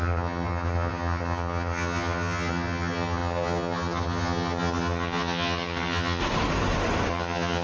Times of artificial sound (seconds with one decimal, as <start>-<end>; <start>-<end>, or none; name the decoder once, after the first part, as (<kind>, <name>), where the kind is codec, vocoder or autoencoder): 0.0-6.2 (vocoder, HiFi-GAN); 7.1-7.6